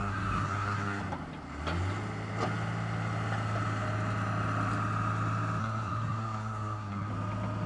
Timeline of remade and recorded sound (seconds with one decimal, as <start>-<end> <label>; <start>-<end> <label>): 0.0-1.0 remade; 1.0-5.6 recorded; 5.6-7.1 remade; 7.1-7.7 recorded

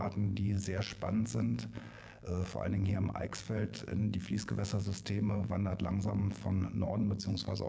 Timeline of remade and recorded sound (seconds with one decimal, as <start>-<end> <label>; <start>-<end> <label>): 0.0-7.7 remade

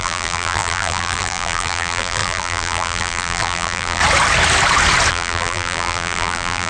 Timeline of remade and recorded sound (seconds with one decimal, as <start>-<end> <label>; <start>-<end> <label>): 0.0-4.0 remade; 4.0-5.1 recorded; 5.1-6.7 remade

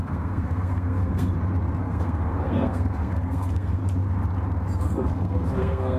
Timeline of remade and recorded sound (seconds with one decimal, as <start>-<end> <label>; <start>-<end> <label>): 0.0-1.3 remade; 1.3-1.8 recorded; 1.8-3.8 remade; 3.8-4.8 recorded; 4.8-6.0 remade

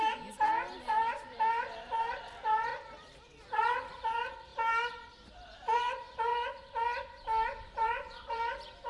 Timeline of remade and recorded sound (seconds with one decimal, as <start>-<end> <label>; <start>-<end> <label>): 0.0-2.7 remade; 2.7-3.4 recorded; 3.4-4.5 remade; 4.5-5.1 recorded; 5.1-6.3 remade; 6.3-7.6 recorded; 7.6-8.9 remade

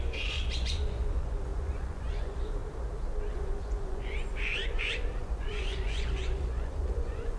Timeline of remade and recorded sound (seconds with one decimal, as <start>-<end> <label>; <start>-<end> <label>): 0.0-2.6 remade; 2.6-3.3 recorded; 3.3-7.4 remade